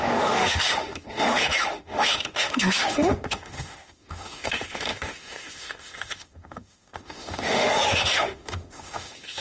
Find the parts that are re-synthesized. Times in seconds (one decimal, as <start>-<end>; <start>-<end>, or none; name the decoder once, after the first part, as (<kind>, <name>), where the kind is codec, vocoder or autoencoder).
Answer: 0.0-9.4 (autoencoder, DAC-VAE)